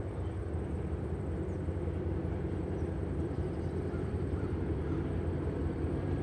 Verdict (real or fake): fake